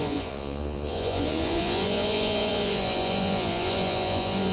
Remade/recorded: remade